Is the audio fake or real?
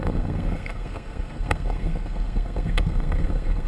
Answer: fake